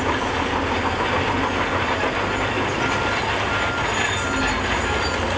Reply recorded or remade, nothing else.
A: recorded